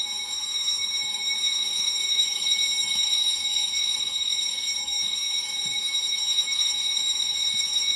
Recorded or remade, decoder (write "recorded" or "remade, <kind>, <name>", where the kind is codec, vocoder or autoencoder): remade, autoencoder, DAC-VAE